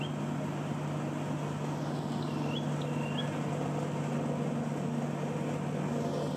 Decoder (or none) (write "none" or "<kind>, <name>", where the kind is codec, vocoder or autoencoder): none